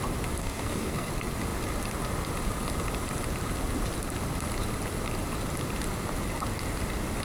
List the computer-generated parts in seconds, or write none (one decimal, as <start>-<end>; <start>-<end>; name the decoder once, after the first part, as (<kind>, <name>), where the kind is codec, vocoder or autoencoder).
0.4-1.1 (codec, SNAC)